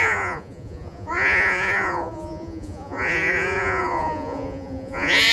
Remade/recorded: remade